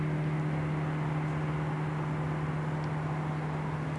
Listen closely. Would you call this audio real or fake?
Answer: real